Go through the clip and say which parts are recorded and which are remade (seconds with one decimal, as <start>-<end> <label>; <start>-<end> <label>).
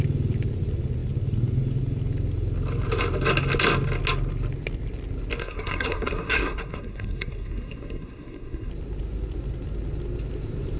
0.0-5.4 recorded; 5.4-8.7 remade; 8.7-10.8 recorded